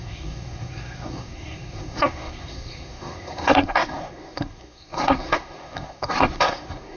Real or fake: fake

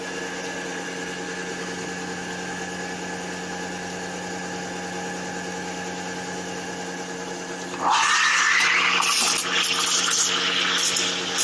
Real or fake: real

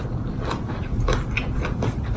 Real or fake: real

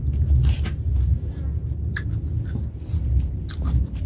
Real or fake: real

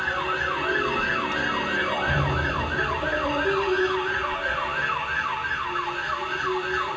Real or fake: real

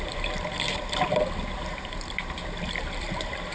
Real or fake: real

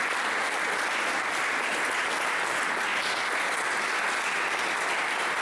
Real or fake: real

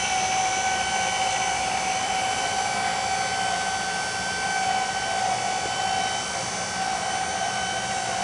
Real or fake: real